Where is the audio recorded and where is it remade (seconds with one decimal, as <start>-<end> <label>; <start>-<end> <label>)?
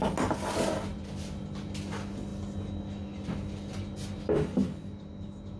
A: 0.0-0.9 recorded; 0.9-1.6 remade; 1.6-5.6 recorded